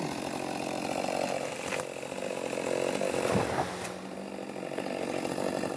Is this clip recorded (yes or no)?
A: yes